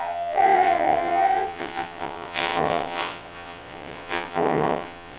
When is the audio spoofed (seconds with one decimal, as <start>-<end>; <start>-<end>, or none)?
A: 0.0-5.2